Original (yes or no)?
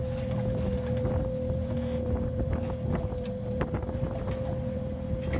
yes